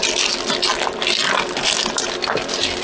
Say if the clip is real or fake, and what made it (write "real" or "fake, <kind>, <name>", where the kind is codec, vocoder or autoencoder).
real